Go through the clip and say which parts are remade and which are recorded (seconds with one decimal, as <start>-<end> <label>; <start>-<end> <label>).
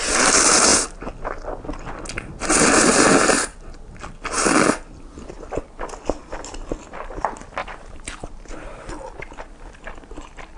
0.0-7.6 recorded; 7.6-8.9 remade; 8.9-10.6 recorded